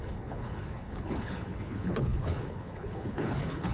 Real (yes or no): no